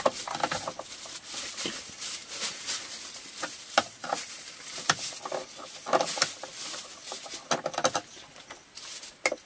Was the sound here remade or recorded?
recorded